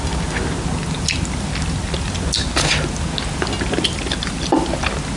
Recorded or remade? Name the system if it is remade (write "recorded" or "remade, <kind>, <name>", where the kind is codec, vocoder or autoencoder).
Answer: recorded